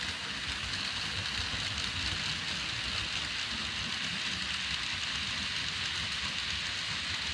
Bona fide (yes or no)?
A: yes